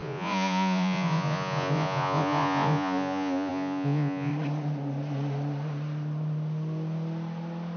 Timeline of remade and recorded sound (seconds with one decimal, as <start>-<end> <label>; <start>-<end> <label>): 0.0-4.3 remade; 4.3-7.8 recorded